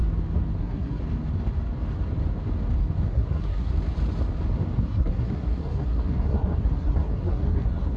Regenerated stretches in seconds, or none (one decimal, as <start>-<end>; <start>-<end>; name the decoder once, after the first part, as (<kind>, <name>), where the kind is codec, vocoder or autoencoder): 0.6-1.0 (codec, SNAC); 3.1-3.7; 4.8-8.0

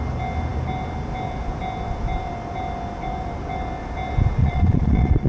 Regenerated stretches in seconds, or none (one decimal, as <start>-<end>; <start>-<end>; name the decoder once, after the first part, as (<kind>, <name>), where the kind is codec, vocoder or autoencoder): 4.4-5.3 (vocoder, Vocos)